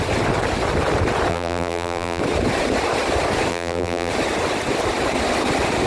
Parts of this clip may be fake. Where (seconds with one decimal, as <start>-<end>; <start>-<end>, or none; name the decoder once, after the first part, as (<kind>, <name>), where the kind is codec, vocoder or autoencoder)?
1.3-2.2 (vocoder, BigVGAN v2); 3.5-4.1